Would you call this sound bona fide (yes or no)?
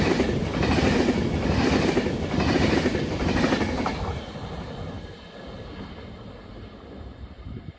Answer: yes